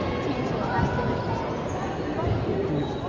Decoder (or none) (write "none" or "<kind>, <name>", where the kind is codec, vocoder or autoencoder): none